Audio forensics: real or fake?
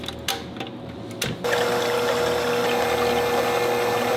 real